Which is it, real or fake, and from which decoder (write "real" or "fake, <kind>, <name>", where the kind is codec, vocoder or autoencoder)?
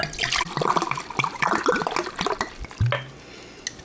real